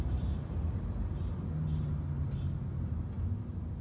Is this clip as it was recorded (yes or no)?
yes